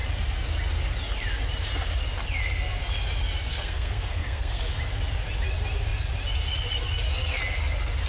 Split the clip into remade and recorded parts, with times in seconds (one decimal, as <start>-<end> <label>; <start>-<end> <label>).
0.0-3.5 recorded; 3.5-4.6 remade; 4.6-8.1 recorded

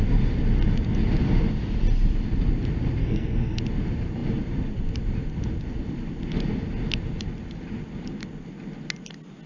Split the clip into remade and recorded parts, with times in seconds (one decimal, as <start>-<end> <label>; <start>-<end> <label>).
0.0-3.0 recorded; 3.0-3.6 remade; 3.6-9.5 recorded

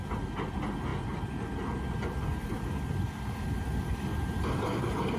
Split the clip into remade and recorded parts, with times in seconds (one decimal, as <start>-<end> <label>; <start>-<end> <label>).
0.0-2.3 recorded; 2.3-5.2 remade

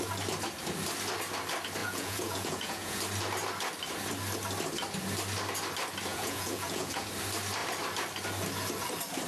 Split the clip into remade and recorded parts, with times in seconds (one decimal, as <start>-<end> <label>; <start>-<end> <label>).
0.0-1.8 recorded; 1.8-3.0 remade; 3.0-6.1 recorded; 6.1-7.1 remade; 7.1-9.3 recorded